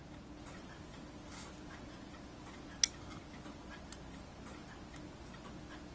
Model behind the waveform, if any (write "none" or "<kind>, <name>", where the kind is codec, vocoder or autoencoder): none